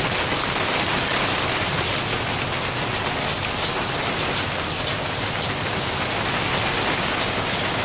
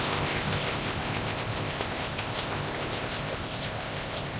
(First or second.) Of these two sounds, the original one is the first